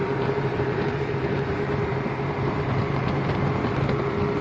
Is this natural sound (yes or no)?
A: no